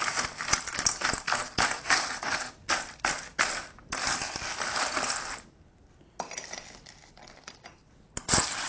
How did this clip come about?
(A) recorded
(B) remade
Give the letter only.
A